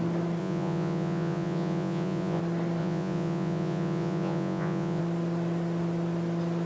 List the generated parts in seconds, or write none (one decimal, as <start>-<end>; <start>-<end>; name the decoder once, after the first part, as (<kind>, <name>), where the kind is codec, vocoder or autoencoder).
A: 0.4-2.4 (vocoder, Vocos); 2.8-5.0